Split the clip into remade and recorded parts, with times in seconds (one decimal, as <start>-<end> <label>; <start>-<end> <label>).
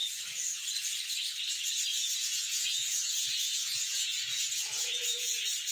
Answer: 0.0-0.6 remade; 0.6-1.9 recorded; 1.9-5.3 remade; 5.3-5.7 recorded